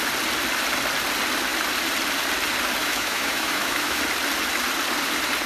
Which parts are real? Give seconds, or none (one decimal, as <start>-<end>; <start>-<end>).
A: 0.0-2.8; 4.0-5.5